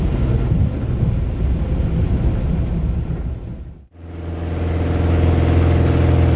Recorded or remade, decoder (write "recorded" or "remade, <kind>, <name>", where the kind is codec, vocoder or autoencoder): recorded